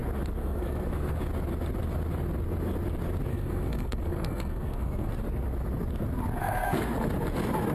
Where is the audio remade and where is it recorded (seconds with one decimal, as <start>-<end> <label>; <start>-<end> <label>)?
0.0-0.4 recorded; 0.4-1.2 remade; 1.2-3.3 recorded; 3.3-5.1 remade; 5.1-6.4 recorded; 6.4-7.1 remade; 7.1-7.7 recorded